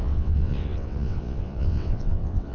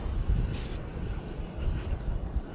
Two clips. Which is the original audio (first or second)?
second